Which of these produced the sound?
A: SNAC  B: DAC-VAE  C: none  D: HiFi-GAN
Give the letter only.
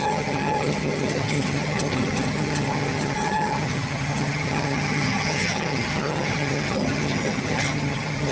D